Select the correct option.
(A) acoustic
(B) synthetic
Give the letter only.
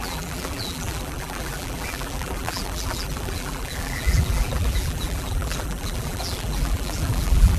B